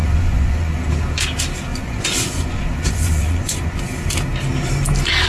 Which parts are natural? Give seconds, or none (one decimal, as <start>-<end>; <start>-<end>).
0.9-1.7; 3.8-5.3